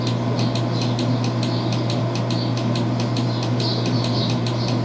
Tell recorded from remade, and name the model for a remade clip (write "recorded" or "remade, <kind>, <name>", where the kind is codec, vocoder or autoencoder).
recorded